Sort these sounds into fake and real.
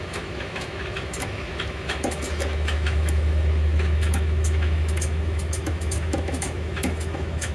fake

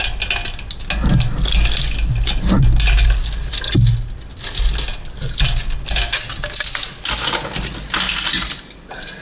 real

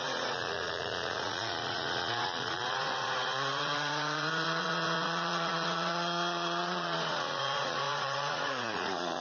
fake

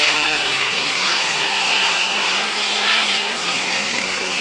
fake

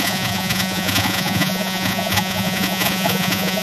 fake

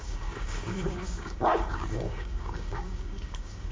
fake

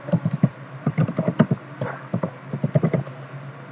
real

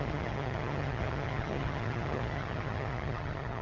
fake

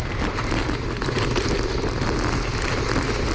real